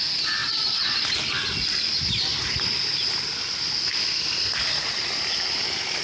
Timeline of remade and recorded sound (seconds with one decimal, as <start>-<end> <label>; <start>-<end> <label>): 0.0-6.0 recorded